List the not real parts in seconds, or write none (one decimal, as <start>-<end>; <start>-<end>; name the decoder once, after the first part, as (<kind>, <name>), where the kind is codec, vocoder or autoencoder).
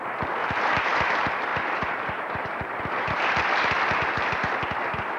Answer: 0.4-1.0 (vocoder, BigVGAN v2); 1.5-2.8